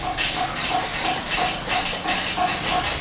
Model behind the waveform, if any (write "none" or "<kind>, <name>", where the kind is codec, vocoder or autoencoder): none